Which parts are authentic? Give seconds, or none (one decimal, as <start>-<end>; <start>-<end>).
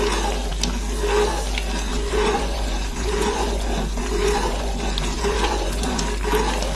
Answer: 0.0-1.9; 6.0-6.8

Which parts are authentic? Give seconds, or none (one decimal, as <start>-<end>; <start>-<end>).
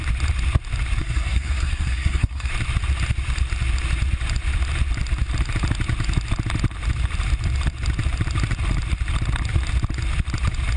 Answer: 0.0-1.0; 2.5-10.8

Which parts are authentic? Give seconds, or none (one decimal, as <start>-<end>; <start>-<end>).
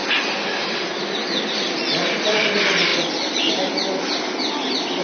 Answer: 0.0-5.0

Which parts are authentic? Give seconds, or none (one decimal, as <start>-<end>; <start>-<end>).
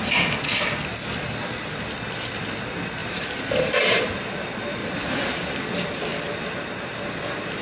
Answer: 0.0-3.0; 4.0-4.8; 5.6-7.6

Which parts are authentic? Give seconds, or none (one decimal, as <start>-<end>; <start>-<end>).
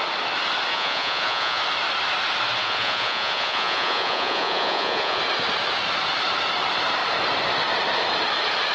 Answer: 0.0-0.7; 1.6-2.6; 5.2-8.7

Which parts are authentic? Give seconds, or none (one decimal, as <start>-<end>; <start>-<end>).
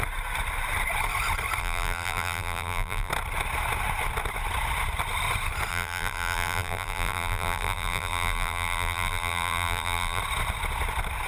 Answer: 0.0-1.6; 3.1-5.7; 10.2-11.3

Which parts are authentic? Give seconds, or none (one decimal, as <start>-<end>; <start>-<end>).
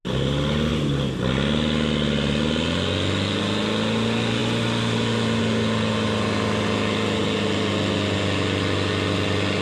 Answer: 0.0-9.6